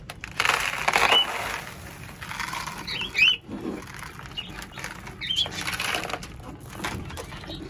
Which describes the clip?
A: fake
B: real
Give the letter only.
B